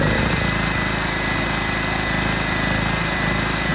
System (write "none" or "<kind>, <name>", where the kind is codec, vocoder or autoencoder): none